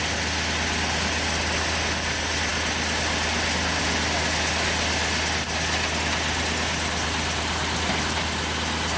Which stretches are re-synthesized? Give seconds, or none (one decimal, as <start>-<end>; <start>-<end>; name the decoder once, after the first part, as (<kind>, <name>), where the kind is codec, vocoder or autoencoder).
none